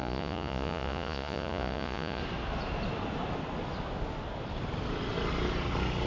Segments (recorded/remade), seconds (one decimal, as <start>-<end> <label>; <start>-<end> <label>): 0.0-2.2 remade; 2.2-6.1 recorded